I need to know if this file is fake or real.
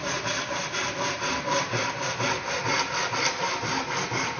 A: real